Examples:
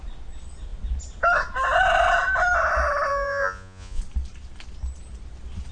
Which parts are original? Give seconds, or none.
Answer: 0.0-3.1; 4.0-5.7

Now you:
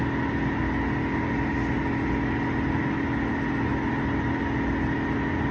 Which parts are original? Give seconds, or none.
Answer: 0.0-5.5

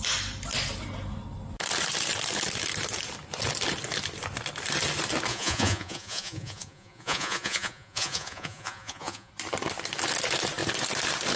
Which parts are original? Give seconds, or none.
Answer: 0.0-5.3; 9.3-11.4

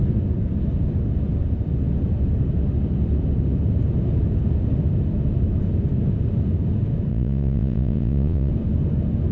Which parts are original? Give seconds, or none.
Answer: 0.0-7.1; 8.5-9.3

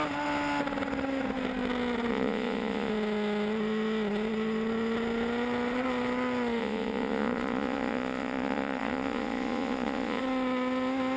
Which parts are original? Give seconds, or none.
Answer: 0.0-2.1; 2.9-6.6; 10.2-11.2

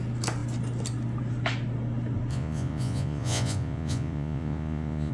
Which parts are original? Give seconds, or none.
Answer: 0.0-2.3

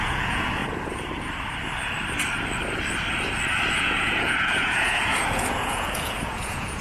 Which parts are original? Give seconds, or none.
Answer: 0.6-3.7

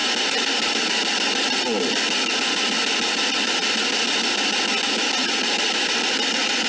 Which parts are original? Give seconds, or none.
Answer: 0.0-6.7